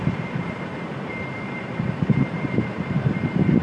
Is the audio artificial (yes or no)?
yes